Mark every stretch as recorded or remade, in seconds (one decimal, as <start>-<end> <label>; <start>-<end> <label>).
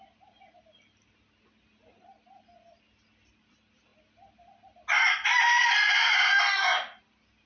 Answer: 0.0-7.5 recorded